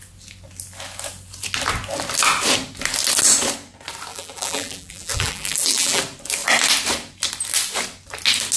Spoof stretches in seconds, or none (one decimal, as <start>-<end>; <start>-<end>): 4.1-6.0